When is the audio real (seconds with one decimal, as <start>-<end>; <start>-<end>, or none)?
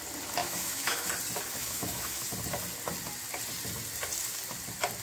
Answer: 0.0-0.4; 1.1-1.6; 2.3-5.0